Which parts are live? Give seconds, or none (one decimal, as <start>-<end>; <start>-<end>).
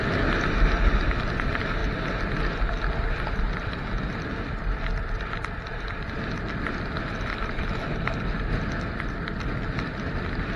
0.0-10.6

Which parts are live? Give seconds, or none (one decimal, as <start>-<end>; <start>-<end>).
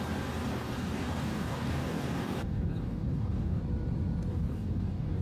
0.0-0.5; 3.6-4.3